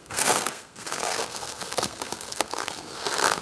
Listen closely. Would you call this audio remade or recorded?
remade